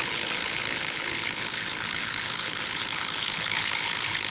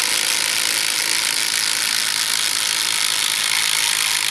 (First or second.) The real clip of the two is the second